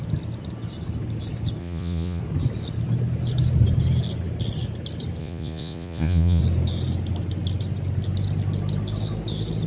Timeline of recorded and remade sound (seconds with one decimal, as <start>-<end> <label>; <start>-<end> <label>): 0.0-1.6 recorded; 1.6-2.2 remade; 2.2-5.2 recorded; 5.2-6.4 remade; 6.4-9.7 recorded